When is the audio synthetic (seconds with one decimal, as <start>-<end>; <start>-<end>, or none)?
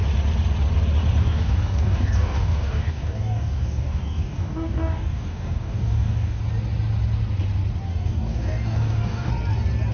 1.2-6.4; 7.9-9.3